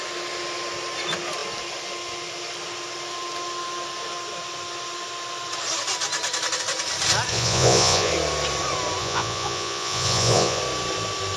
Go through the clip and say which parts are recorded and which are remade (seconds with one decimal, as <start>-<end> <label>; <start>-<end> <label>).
0.0-7.3 recorded; 7.3-8.1 remade; 8.1-9.0 recorded; 9.0-10.6 remade; 10.6-11.4 recorded